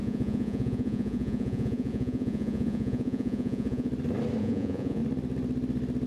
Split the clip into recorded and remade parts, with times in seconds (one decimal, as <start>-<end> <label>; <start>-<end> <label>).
0.0-3.9 remade; 3.9-4.4 recorded; 4.4-5.0 remade; 5.0-6.1 recorded